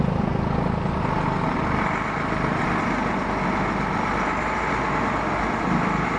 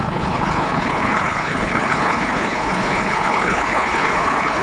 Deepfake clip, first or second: second